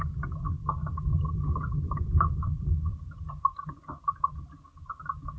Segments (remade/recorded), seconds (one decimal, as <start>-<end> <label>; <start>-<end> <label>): 0.0-0.8 recorded; 0.8-3.7 remade; 3.7-5.4 recorded